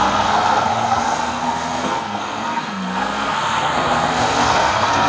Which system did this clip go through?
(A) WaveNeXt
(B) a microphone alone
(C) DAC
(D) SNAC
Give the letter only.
D